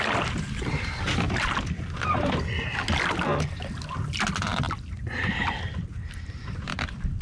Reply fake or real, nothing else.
real